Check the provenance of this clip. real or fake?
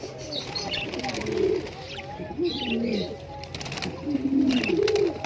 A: real